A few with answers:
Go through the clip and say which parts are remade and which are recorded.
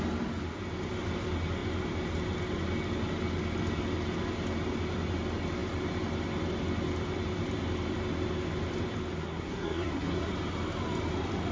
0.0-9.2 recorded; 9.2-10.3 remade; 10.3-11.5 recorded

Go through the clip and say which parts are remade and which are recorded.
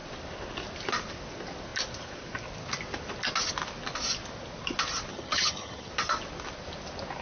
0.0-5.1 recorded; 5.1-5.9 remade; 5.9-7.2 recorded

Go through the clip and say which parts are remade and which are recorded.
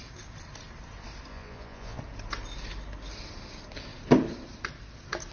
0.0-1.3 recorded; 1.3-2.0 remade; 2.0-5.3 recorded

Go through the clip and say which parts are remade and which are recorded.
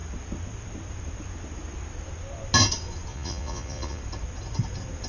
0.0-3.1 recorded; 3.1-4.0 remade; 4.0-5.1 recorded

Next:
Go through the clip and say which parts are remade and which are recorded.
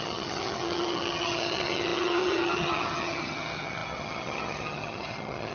0.0-5.5 remade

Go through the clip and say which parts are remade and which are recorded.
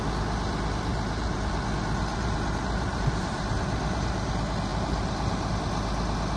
0.0-0.9 recorded; 0.9-1.5 remade; 1.5-2.1 recorded; 2.1-4.3 remade; 4.3-4.7 recorded; 4.7-5.6 remade; 5.6-6.4 recorded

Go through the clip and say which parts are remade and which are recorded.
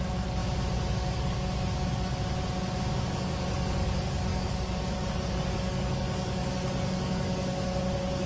0.0-0.4 remade; 0.4-0.9 recorded; 0.9-2.1 remade; 2.1-3.0 recorded; 3.0-8.3 remade